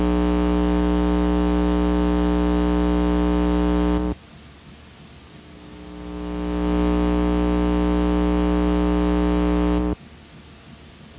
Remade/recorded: recorded